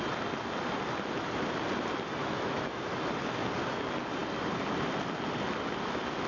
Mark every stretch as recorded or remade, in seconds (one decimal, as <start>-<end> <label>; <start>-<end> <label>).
0.0-2.2 recorded; 2.2-2.9 remade; 2.9-6.3 recorded